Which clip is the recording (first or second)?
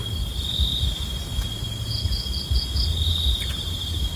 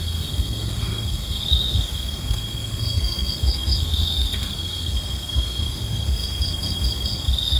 first